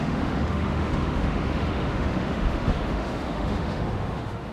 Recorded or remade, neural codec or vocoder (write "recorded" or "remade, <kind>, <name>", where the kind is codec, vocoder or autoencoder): remade, autoencoder, DAC-VAE